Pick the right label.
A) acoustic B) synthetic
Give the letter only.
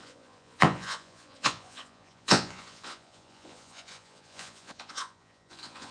B